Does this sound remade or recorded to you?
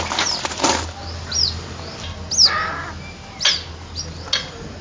recorded